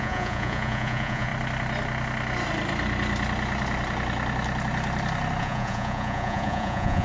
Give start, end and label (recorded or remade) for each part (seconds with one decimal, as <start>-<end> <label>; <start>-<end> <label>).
0.0-1.3 remade; 1.3-5.4 recorded; 5.4-7.0 remade